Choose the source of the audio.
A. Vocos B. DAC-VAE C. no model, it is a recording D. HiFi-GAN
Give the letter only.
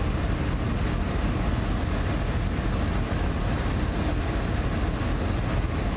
C